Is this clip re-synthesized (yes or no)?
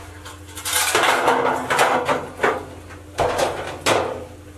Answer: no